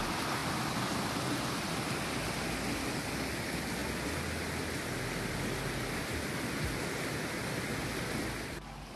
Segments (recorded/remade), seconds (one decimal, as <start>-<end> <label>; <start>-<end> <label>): 0.0-9.0 recorded